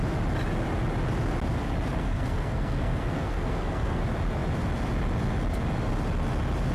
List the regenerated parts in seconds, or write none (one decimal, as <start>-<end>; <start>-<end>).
1.9-4.0